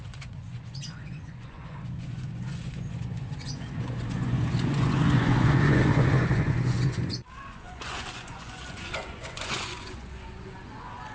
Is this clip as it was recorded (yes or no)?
no